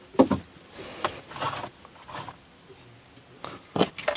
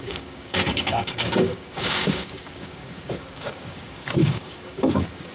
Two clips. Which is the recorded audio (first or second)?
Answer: first